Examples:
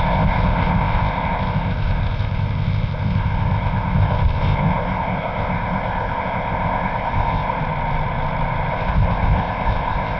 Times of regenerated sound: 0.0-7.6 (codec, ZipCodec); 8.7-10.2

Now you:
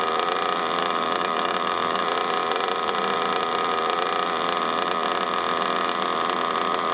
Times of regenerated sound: 0.8-2.0 (autoencoder, DAC-VAE)

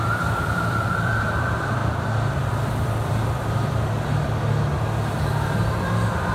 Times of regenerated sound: 0.0-1.8 (vocoder, BigVGAN v2); 2.5-6.3

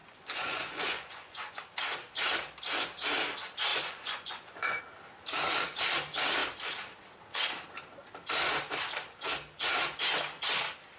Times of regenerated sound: 0.0-1.6 (vocoder, Vocos); 3.7-4.8

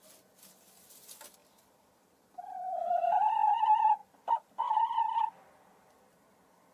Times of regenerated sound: 1.4-3.3 (vocoder, BigVGAN v2)

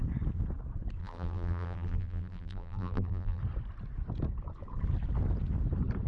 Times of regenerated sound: 1.0-3.4 (vocoder, BigVGAN v2)

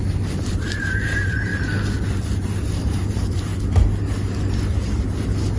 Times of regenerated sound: 0.0-1.5 (vocoder, BigVGAN v2); 2.1-3.5; 4.5-5.6